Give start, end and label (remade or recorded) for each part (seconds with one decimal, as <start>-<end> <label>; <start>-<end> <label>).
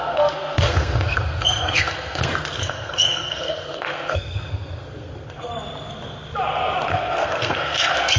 0.0-5.5 remade; 5.5-6.9 recorded; 6.9-8.2 remade